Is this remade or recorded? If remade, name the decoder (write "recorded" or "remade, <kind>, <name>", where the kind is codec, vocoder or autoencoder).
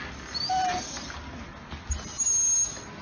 recorded